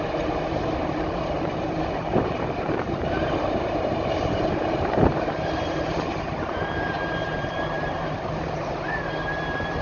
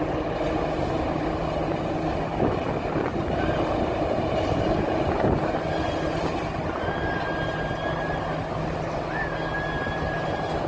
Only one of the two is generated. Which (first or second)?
first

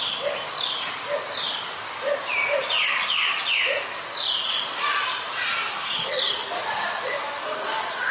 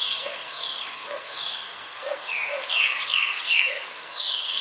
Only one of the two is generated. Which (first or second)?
second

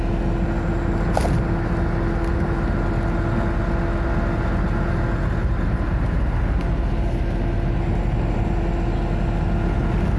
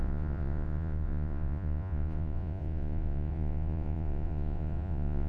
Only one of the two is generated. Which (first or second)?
second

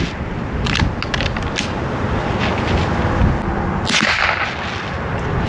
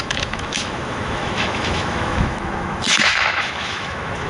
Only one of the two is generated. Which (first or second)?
second